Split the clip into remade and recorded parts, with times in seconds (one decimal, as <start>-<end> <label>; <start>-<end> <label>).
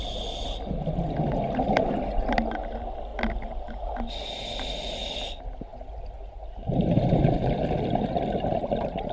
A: 0.0-9.1 recorded